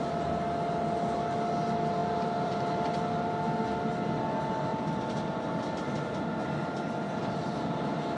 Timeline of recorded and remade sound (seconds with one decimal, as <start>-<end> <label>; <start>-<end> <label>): 0.0-2.0 recorded; 2.0-3.2 remade; 3.2-4.7 recorded; 4.7-7.2 remade; 7.2-8.2 recorded